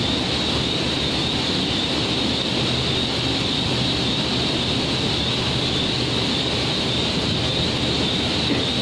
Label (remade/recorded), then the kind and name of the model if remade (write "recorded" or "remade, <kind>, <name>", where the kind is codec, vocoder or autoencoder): recorded